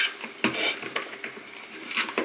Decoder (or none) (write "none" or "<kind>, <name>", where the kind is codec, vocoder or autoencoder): none